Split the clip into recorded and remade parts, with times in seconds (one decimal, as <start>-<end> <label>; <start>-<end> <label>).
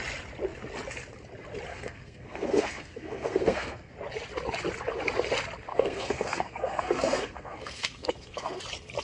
0.0-1.7 recorded; 1.7-3.9 remade; 3.9-5.7 recorded; 5.7-8.6 remade; 8.6-9.0 recorded